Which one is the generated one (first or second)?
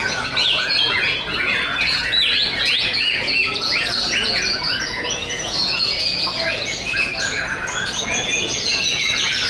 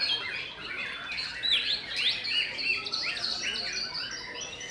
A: first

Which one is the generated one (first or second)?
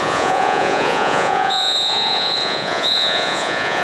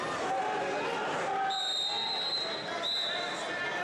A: first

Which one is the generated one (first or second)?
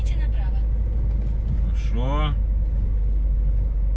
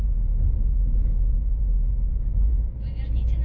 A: second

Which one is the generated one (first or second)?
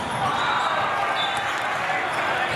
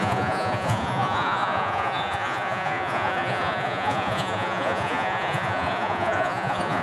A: second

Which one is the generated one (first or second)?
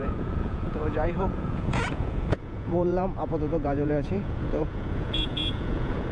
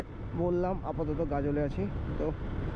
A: first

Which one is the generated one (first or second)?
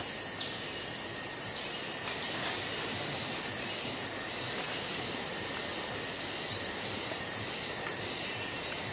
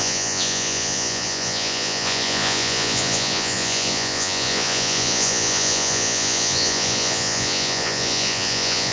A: second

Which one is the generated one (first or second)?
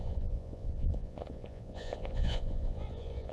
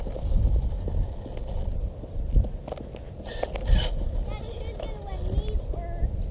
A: first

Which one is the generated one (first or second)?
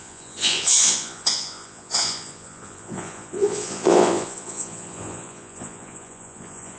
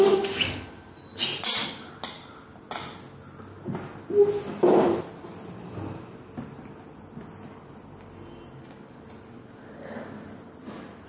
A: first